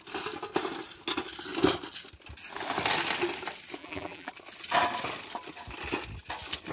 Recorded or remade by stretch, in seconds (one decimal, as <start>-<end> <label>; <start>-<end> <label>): 0.0-3.8 recorded; 3.8-4.3 remade; 4.3-6.7 recorded